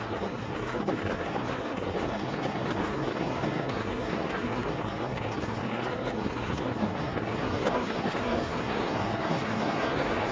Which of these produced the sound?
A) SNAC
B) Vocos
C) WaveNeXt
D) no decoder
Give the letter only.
A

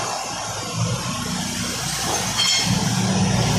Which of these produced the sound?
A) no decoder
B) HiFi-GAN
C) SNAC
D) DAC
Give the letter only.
A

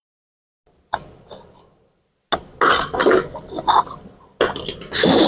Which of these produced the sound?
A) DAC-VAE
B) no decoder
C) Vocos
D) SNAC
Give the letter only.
B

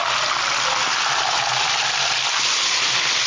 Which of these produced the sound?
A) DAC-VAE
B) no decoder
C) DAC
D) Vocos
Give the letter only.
B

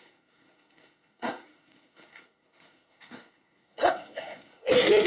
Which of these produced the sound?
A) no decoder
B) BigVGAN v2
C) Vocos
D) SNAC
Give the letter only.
D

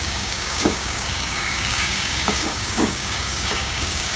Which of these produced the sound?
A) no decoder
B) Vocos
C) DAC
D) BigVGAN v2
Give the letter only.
C